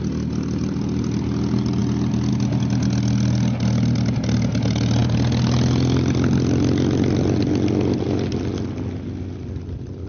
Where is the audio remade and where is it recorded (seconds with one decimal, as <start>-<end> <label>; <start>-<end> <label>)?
0.0-10.1 recorded